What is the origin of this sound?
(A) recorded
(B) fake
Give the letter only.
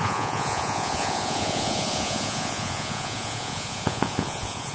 B